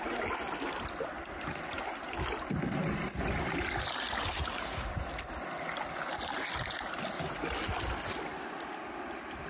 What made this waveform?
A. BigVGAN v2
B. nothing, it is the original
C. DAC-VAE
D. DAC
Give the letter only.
B